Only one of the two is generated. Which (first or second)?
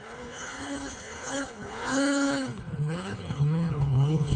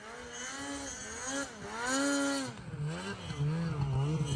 first